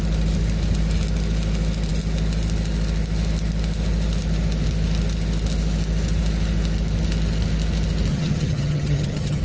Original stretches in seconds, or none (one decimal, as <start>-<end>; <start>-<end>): 0.0-8.1